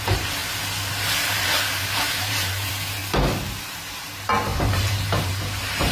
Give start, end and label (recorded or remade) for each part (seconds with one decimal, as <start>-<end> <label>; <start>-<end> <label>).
0.0-0.4 remade; 0.4-0.9 recorded; 0.9-3.0 remade; 3.0-3.5 recorded; 3.5-5.9 remade